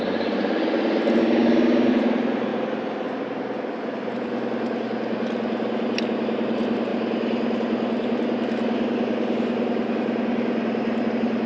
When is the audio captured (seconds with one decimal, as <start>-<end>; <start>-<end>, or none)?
0.0-1.2; 1.9-11.5